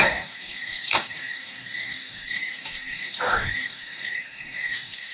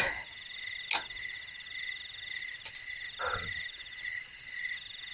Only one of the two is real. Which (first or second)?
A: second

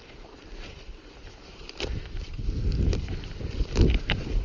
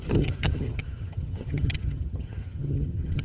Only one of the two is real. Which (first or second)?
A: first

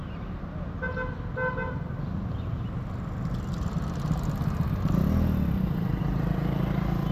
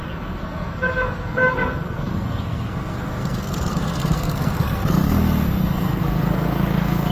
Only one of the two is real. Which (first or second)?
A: first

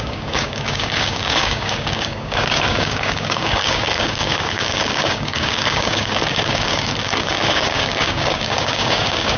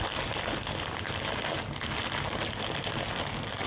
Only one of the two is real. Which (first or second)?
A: second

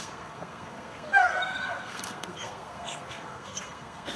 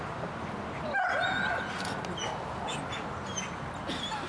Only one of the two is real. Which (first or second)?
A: second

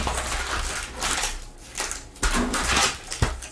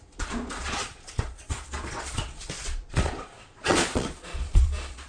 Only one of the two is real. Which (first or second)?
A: first